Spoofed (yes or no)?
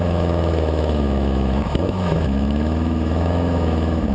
yes